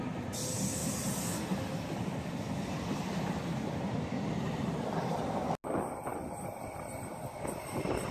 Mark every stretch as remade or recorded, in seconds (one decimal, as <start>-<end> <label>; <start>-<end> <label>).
0.0-0.8 recorded; 0.8-4.8 remade; 4.8-6.1 recorded; 6.1-6.9 remade; 6.9-8.1 recorded